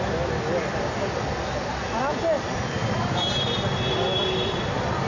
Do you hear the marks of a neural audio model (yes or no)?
no